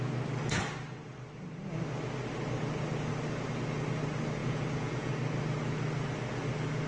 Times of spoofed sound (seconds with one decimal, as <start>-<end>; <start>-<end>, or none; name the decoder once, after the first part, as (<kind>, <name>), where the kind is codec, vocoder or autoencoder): 4.4-5.1 (vocoder, Vocos)